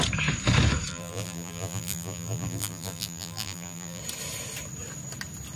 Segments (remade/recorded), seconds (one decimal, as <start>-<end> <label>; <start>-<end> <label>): 0.0-0.9 recorded; 0.9-4.0 remade; 4.0-5.6 recorded